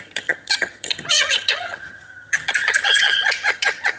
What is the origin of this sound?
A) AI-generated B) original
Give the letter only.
A